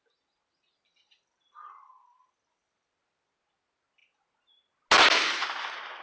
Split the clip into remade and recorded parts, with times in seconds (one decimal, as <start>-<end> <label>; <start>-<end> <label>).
0.0-6.0 recorded

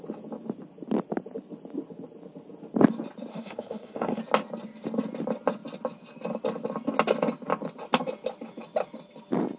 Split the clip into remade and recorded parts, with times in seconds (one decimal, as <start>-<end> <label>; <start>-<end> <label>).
0.0-3.3 recorded; 3.3-4.2 remade; 4.2-9.6 recorded

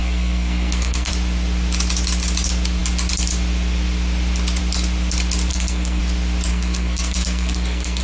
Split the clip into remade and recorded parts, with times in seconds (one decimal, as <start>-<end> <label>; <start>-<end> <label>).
0.0-1.1 remade; 1.1-5.5 recorded; 5.5-6.0 remade; 6.0-6.5 recorded; 6.5-8.0 remade

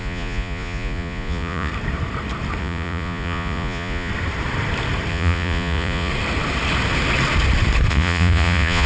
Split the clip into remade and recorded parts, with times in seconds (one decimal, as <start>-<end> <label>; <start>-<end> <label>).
0.0-1.7 remade; 1.7-2.6 recorded; 2.6-4.1 remade; 4.1-5.1 recorded; 5.1-6.1 remade; 6.1-7.9 recorded; 7.9-8.9 remade